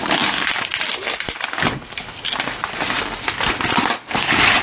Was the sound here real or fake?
real